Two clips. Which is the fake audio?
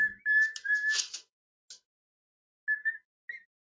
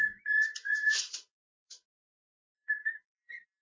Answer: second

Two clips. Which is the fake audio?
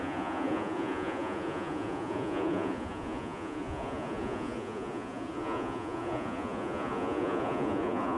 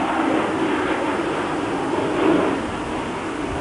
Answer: first